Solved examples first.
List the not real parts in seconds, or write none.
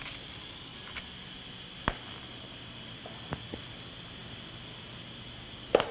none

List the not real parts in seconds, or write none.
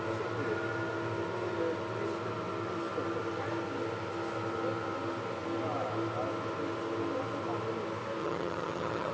8.2-9.1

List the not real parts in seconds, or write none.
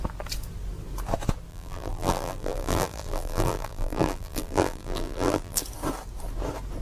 1.5-5.6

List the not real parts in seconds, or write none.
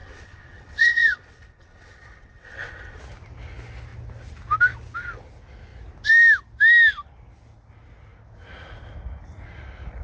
0.0-3.0